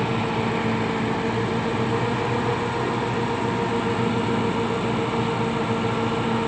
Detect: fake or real real